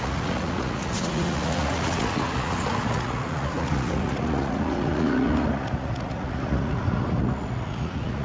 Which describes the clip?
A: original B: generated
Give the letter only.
B